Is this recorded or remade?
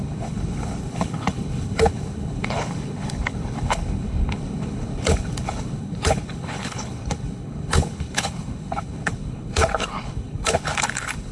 remade